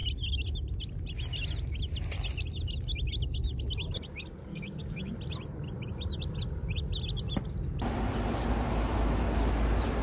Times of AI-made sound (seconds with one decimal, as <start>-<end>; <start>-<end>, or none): 4.5-5.1